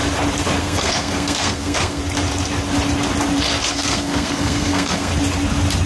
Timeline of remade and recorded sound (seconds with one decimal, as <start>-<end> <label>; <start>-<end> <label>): 0.0-0.6 recorded; 0.6-2.0 remade; 2.0-3.7 recorded; 3.7-5.1 remade; 5.1-5.9 recorded